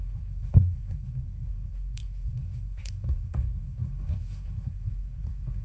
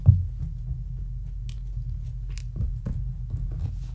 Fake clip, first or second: first